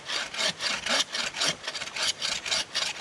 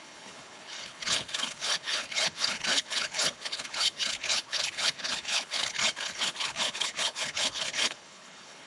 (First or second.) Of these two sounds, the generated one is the second